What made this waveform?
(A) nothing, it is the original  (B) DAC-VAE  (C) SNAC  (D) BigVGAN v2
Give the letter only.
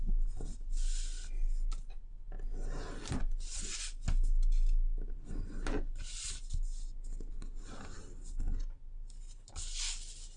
A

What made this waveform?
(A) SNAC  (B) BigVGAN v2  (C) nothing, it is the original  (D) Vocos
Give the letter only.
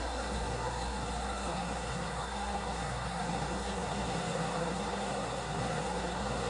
A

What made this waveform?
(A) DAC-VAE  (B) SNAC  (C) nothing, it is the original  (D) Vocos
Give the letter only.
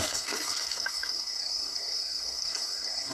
B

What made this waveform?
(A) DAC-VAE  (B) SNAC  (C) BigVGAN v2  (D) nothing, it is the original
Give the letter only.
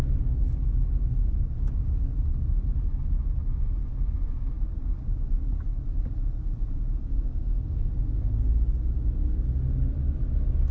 D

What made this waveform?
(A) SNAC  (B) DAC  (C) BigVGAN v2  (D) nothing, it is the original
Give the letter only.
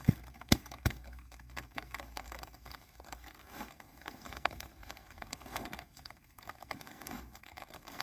A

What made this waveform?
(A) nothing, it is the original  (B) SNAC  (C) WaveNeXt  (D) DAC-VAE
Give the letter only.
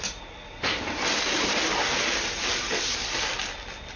A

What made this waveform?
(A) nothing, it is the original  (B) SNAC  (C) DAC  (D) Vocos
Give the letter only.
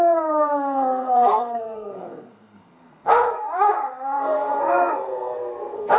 B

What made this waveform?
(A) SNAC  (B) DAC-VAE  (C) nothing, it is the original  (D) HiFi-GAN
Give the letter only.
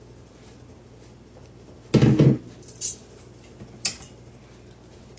C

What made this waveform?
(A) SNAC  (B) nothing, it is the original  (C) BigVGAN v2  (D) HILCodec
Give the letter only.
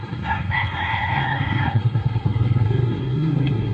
A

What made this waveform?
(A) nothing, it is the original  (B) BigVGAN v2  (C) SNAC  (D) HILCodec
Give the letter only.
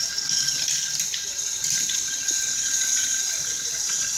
A